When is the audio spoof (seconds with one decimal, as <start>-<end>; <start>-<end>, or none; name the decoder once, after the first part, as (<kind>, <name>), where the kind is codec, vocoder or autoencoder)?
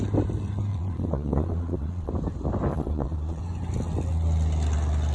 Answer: 0.7-2.1 (vocoder, Vocos); 2.7-3.4